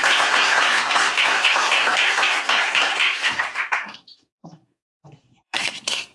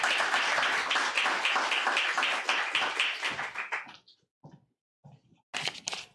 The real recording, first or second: second